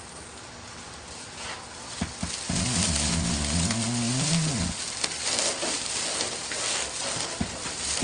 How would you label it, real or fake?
real